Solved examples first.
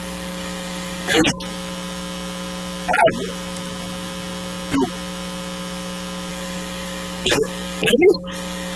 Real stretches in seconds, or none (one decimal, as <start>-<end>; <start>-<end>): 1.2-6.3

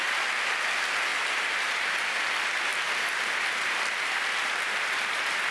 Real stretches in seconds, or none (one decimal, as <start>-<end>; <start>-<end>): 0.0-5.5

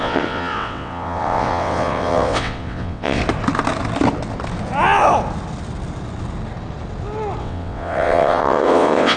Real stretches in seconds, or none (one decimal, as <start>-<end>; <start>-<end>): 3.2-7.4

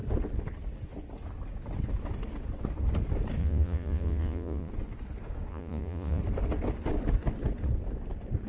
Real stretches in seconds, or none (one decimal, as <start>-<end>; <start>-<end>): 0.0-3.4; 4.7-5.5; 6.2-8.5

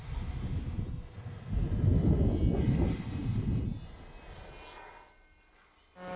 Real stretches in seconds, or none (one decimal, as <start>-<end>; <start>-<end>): 0.0-6.2

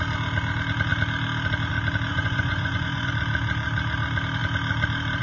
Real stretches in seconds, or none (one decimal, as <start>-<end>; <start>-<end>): 0.0-2.1; 3.1-5.2

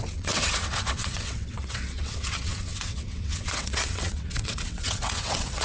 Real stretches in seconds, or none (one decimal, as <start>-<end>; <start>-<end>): none